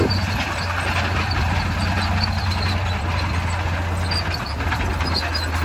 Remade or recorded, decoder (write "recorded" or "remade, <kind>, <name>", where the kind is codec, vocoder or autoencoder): recorded